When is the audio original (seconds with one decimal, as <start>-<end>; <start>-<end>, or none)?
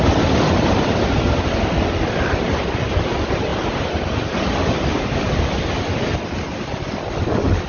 0.0-6.1; 7.0-7.7